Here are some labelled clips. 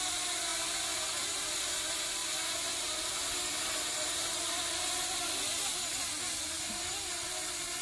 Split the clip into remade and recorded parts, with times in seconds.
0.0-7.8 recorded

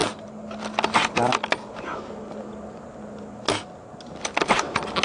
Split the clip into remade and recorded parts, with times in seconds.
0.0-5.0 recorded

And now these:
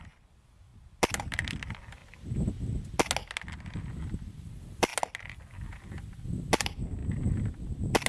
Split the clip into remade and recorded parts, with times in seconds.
0.0-0.7 remade; 0.7-1.3 recorded; 1.3-2.0 remade; 2.0-4.4 recorded; 4.4-4.9 remade; 4.9-6.6 recorded; 6.6-7.0 remade; 7.0-8.1 recorded